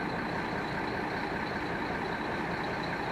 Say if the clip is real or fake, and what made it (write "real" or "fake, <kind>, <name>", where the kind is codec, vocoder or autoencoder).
real